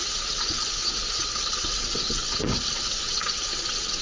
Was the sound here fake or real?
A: fake